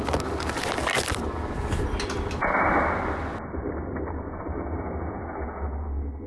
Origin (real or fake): real